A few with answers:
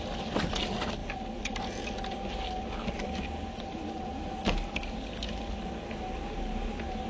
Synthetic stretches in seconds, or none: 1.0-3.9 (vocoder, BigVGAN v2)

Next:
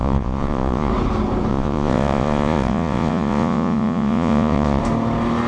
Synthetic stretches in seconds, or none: 0.0-0.9 (vocoder, Vocos); 1.5-4.8

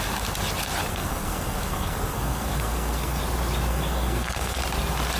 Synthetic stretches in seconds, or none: 0.9-3.2 (codec, SNAC); 3.7-4.6